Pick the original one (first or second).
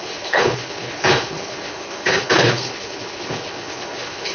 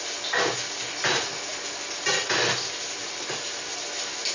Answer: second